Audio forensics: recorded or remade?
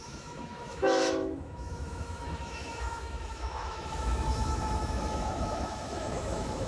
remade